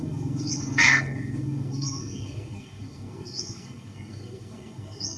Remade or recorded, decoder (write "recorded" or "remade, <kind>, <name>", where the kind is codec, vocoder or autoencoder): remade, codec, SNAC